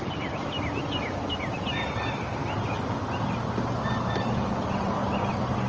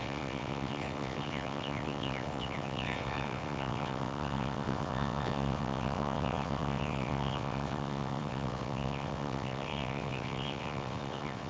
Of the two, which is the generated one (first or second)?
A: second